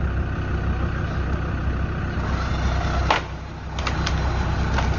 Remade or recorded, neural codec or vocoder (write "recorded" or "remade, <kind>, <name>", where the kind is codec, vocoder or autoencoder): recorded